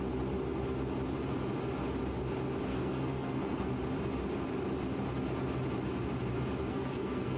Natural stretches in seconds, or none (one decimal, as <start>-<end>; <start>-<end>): 0.0-2.7; 3.7-6.7